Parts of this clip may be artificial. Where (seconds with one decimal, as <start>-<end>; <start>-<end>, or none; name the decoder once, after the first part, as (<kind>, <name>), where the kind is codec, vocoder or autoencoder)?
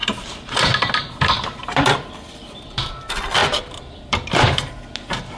0.0-2.9 (vocoder, BigVGAN v2); 3.4-4.7